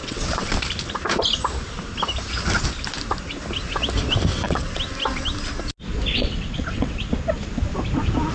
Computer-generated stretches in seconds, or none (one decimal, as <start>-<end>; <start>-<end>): 0.0-0.5; 4.3-4.8; 6.1-7.0